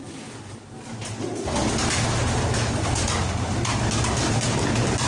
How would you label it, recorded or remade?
recorded